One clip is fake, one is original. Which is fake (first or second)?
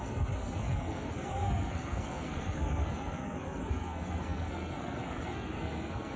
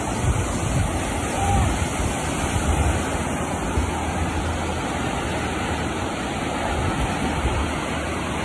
first